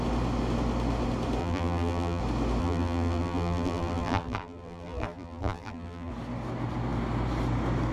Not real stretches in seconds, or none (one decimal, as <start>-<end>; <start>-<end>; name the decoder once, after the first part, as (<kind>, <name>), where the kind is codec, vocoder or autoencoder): 1.4-2.2 (vocoder, BigVGAN v2); 2.6-6.1